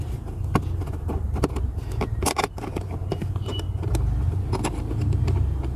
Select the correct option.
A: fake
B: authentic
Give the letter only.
B